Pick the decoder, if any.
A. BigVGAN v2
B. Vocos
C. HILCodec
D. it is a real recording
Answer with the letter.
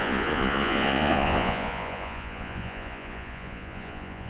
B